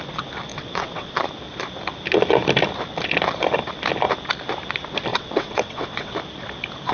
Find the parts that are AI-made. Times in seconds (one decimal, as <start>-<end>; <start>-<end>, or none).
0.5-1.1; 5.1-6.1